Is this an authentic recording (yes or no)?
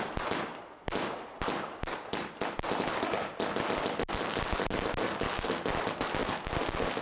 yes